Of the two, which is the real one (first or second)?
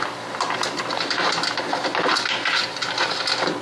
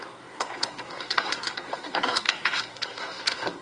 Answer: first